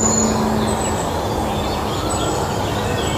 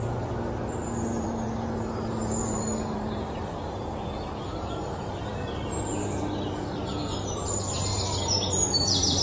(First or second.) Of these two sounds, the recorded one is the first